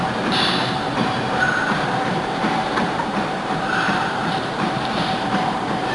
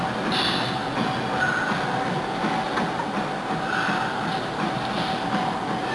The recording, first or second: second